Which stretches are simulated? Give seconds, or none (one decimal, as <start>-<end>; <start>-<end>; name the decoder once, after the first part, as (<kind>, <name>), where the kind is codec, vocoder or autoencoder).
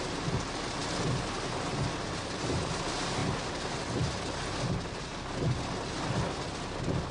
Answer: none